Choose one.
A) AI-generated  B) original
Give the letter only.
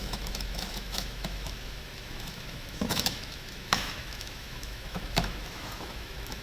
A